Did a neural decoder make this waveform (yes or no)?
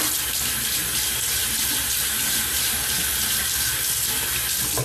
no